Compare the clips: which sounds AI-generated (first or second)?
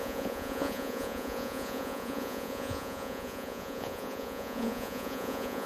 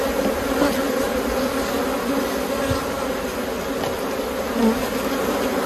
first